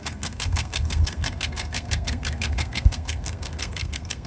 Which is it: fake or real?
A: fake